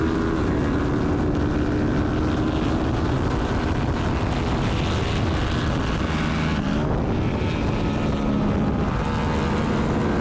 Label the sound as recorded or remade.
recorded